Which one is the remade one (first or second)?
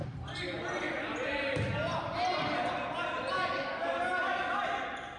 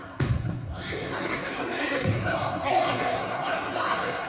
second